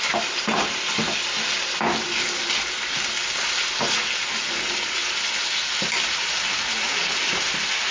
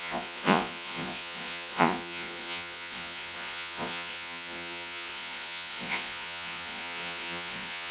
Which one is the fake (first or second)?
second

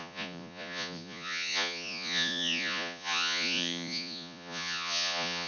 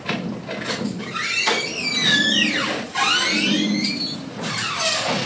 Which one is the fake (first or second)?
first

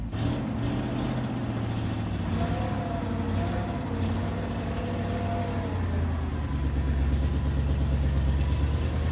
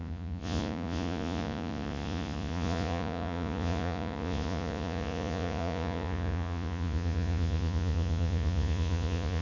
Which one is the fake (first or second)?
second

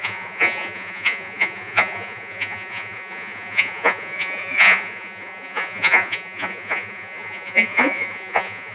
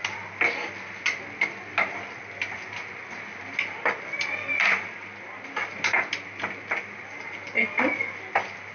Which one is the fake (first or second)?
first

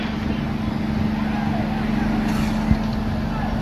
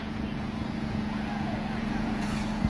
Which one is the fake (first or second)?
second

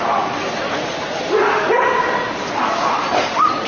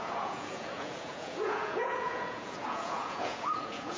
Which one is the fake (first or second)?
second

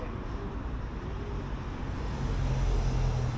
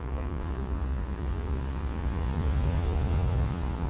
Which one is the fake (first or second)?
second